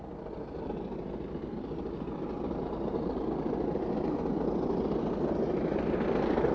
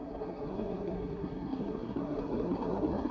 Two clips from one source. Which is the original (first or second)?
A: first